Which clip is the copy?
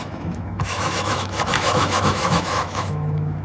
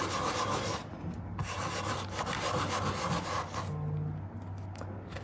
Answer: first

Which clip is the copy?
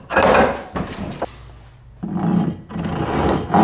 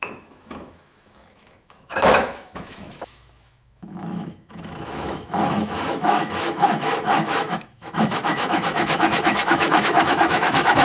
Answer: second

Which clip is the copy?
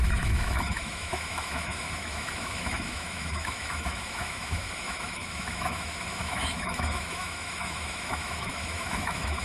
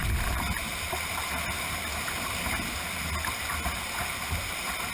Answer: first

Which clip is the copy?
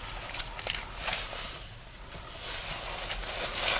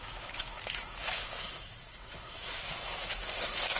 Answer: second